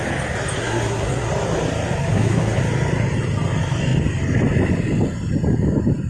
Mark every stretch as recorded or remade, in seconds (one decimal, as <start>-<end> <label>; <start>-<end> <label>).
0.0-0.6 recorded; 0.6-1.3 remade; 1.3-2.1 recorded; 2.1-2.6 remade; 2.6-6.1 recorded